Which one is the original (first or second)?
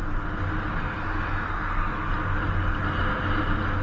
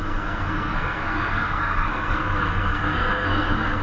first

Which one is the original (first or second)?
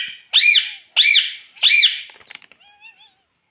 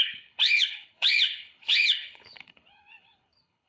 first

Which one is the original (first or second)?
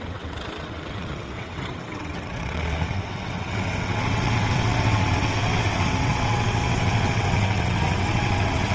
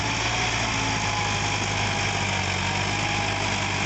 second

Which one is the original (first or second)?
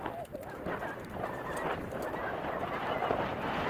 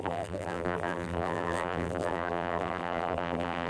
first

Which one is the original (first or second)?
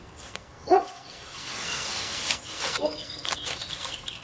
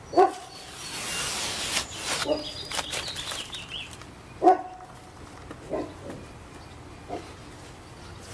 second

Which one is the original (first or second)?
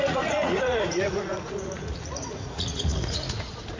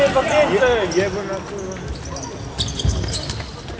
second